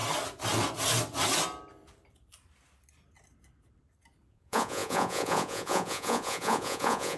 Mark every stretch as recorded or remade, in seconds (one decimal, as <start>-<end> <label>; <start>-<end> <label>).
0.0-4.3 recorded; 4.3-7.2 remade